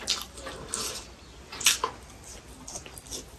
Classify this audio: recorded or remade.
recorded